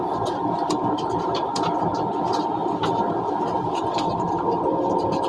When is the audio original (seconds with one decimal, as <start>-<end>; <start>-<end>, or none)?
none